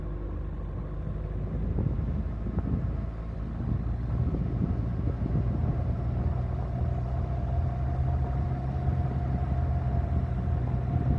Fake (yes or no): no